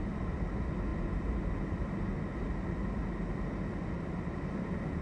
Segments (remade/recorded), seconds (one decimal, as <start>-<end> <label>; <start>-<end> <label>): 0.0-5.0 recorded